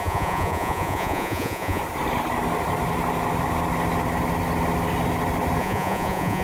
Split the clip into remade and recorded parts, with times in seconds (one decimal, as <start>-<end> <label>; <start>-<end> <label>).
0.0-1.8 remade; 1.8-5.6 recorded; 5.6-6.4 remade